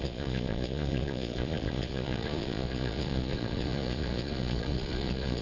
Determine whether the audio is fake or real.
fake